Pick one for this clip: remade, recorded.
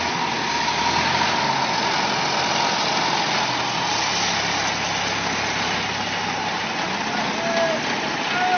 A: recorded